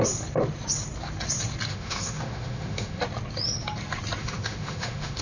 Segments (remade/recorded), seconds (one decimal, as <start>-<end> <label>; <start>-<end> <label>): 0.0-1.7 recorded; 1.7-3.0 remade; 3.0-4.2 recorded; 4.2-5.2 remade